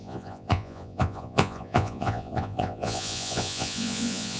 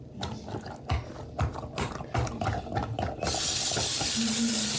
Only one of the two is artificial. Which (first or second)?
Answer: first